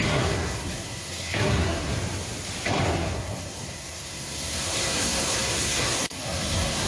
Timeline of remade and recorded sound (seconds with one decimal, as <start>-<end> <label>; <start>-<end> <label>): 0.0-1.9 remade; 1.9-2.7 recorded; 2.7-6.9 remade